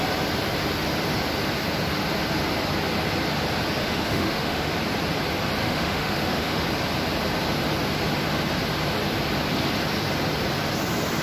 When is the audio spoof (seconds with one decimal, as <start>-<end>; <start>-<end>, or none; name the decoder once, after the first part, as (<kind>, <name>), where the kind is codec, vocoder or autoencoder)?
3.8-4.7 (autoencoder, DAC-VAE); 5.6-6.6